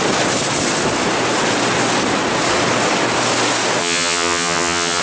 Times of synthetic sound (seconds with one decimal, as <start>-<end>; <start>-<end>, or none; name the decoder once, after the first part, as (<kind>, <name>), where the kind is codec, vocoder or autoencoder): 3.8-5.0 (vocoder, HiFi-GAN)